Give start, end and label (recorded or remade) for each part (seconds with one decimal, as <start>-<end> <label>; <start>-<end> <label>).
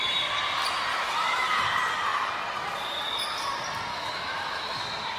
0.0-0.9 recorded; 0.9-1.6 remade; 1.6-3.9 recorded; 3.9-4.8 remade; 4.8-5.2 recorded